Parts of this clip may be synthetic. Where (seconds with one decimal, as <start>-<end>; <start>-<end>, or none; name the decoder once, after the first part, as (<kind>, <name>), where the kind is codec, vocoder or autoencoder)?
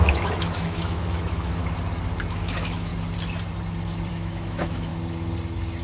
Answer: 0.0-1.6 (autoencoder, DAC-VAE); 2.3-2.9; 4.1-4.9